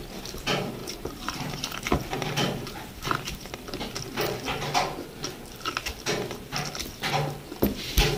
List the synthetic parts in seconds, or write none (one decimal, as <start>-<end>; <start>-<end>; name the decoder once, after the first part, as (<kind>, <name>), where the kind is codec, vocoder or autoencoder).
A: 0.8-3.6 (vocoder, BigVGAN v2)